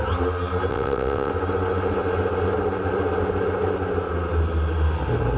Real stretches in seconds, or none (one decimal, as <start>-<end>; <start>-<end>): 0.0-0.7; 1.3-5.4